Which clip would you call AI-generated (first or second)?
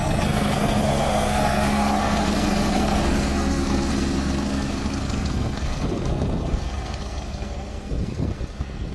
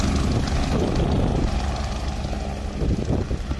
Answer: first